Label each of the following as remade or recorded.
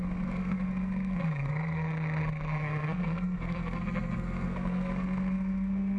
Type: remade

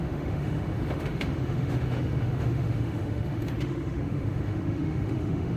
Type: remade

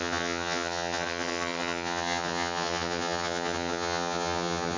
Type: remade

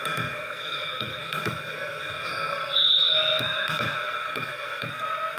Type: remade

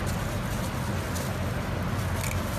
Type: recorded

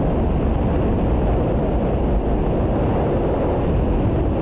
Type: recorded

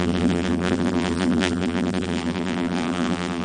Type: remade